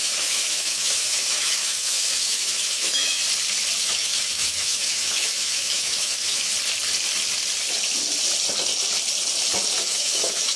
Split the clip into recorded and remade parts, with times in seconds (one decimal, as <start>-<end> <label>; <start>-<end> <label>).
0.0-3.2 remade; 3.2-3.8 recorded; 3.8-6.5 remade; 6.5-9.8 recorded; 9.8-10.6 remade